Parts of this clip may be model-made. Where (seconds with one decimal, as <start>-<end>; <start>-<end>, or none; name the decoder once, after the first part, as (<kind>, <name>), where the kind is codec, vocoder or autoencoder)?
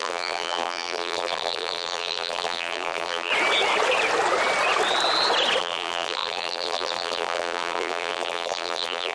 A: 0.0-3.3 (vocoder, BigVGAN v2); 5.6-9.1